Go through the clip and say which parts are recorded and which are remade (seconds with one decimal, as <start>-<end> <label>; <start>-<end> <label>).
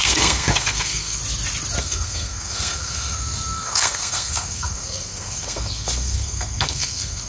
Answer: 0.0-1.2 remade; 1.2-1.8 recorded; 1.8-7.3 remade